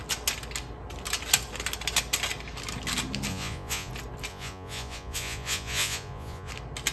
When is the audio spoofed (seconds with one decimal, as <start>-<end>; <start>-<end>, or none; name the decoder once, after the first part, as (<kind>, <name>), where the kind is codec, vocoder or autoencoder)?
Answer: 3.3-3.9 (vocoder, Vocos); 4.3-6.5